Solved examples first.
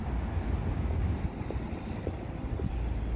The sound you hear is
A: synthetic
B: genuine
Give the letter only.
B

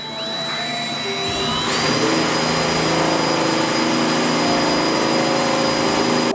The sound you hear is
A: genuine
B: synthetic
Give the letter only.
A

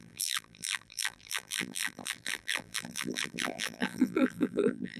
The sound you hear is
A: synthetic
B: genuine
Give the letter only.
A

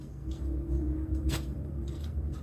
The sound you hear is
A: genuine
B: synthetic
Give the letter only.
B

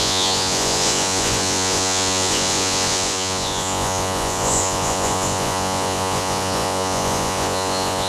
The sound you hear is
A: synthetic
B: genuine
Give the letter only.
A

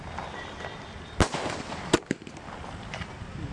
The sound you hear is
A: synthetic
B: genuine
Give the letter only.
B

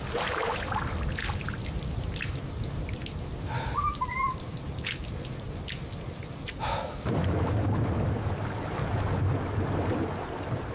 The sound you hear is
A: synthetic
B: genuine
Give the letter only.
B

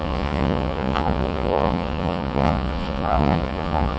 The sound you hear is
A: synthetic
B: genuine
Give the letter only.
A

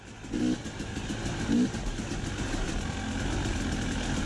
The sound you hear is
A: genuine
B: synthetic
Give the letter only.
A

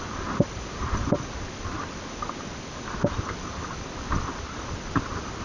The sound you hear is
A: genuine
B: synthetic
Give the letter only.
B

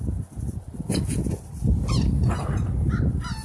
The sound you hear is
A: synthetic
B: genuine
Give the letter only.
B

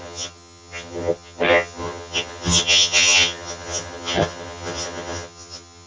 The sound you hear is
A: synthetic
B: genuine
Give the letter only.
A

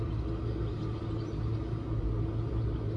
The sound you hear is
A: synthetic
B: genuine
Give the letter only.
B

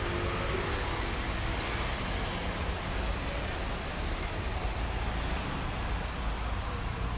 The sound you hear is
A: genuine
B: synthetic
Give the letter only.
A